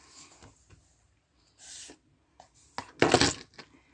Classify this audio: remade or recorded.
recorded